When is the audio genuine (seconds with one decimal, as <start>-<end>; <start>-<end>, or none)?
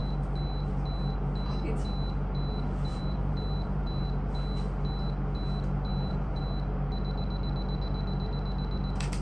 0.0-2.9; 4.0-5.9; 6.4-9.2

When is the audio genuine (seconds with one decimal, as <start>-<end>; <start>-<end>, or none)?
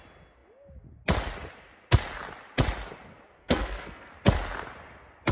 0.0-3.4; 4.1-5.3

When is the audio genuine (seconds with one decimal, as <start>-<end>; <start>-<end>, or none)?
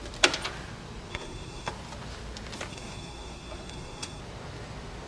0.0-1.1; 1.7-2.7; 4.2-5.1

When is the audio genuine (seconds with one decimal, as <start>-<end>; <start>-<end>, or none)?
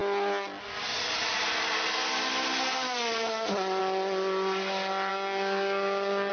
0.0-5.1